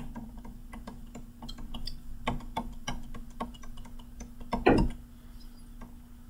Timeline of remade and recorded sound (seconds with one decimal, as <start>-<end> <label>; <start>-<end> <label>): 0.0-6.3 recorded